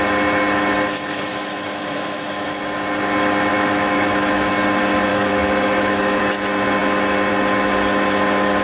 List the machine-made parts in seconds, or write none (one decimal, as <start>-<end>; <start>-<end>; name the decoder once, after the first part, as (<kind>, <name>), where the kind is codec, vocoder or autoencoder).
1.3-2.6 (autoencoder, DAC-VAE); 3.5-4.5; 5.1-6.2